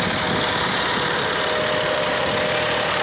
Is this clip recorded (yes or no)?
yes